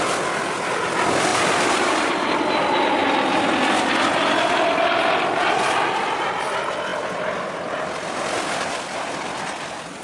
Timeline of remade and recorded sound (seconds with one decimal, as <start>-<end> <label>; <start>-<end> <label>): 0.0-1.3 recorded; 1.3-2.1 remade; 2.1-10.0 recorded